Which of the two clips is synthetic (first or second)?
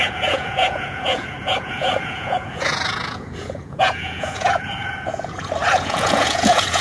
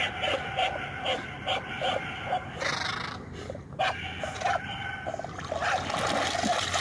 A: first